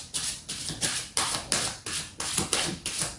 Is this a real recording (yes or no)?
yes